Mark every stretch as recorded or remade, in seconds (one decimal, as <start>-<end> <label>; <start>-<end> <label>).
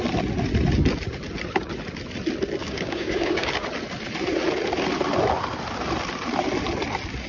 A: 0.0-2.6 recorded; 2.6-3.5 remade; 3.5-7.3 recorded